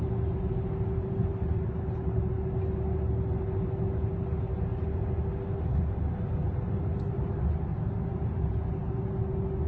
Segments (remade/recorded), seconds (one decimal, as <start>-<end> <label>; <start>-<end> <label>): 0.0-9.7 recorded